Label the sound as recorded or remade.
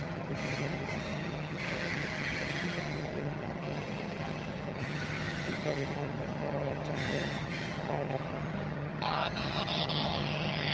remade